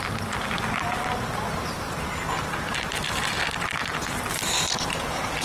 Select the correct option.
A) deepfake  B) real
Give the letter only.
B